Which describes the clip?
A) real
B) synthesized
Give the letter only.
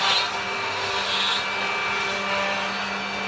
A